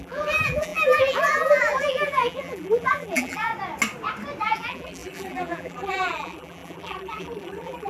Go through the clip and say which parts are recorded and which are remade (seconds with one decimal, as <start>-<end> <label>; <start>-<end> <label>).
0.0-3.5 remade; 3.5-4.4 recorded; 4.4-7.9 remade